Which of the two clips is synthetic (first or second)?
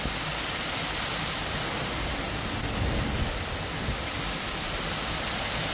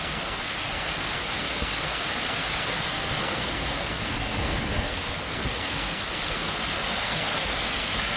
second